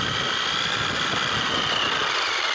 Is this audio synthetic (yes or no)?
no